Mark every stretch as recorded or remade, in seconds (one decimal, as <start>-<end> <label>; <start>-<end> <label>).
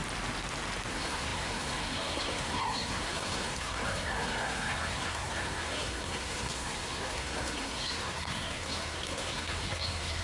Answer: 0.0-0.9 recorded; 0.9-10.2 remade